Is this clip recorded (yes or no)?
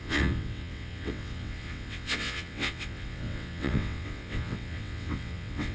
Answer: no